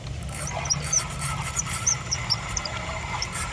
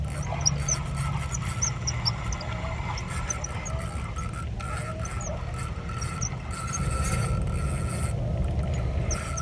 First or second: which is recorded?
second